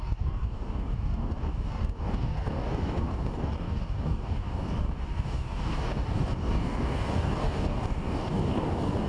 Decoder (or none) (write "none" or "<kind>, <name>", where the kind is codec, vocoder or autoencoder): codec, DAC